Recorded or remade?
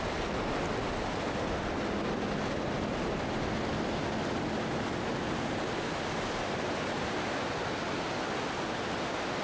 recorded